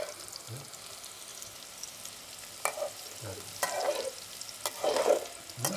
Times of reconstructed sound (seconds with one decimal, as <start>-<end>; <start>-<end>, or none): 1.3-4.8